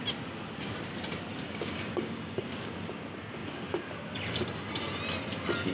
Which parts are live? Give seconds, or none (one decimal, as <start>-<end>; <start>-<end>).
0.0-1.3; 2.7-5.7